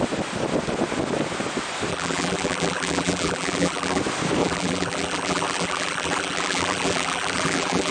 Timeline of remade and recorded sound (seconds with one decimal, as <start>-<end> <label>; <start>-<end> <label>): 0.0-1.9 recorded; 1.9-4.0 remade; 4.0-4.4 recorded; 4.4-7.9 remade